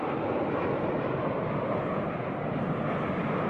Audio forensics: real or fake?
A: real